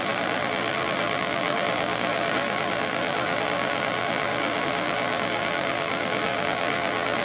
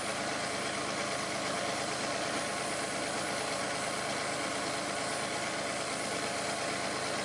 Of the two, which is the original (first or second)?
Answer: second